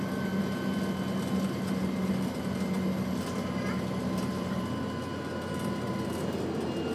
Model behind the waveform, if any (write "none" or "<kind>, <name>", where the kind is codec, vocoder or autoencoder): none